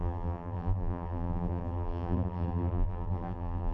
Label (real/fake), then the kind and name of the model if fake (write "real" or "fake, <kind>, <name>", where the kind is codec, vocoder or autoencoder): fake, vocoder, BigVGAN v2